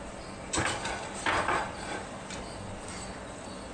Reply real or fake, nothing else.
real